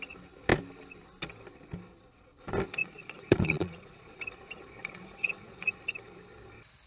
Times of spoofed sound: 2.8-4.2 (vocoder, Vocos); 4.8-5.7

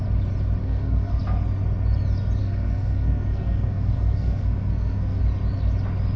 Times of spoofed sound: 0.6-1.2 (codec, SNAC); 2.4-5.2

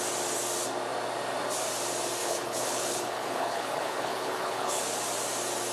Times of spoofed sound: 2.2-4.8 (codec, HILCodec)

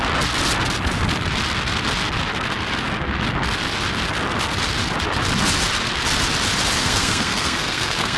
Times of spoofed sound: 6.8-8.2 (codec, SNAC)

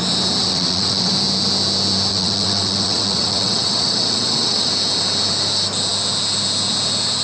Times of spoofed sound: 0.4-1.1 (vocoder, WaveNeXt); 2.1-4.7

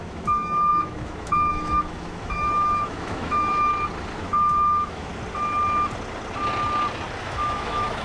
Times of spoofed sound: 0.0-3.7 (autoencoder, DAC-VAE); 4.2-5.1; 7.2-8.0

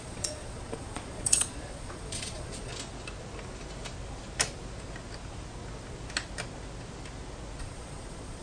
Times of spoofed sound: 0.0-2.7 (vocoder, Vocos); 7.6-8.4

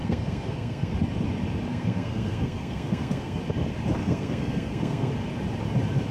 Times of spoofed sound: 0.0-0.9 (codec, SNAC); 1.7-3.4; 4.0-5.1